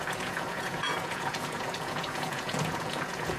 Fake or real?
fake